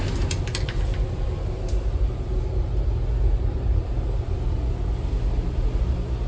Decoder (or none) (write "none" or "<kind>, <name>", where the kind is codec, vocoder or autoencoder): none